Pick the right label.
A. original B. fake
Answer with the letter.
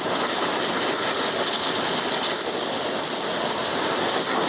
A